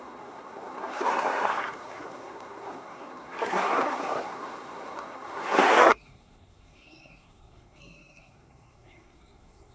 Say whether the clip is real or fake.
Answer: fake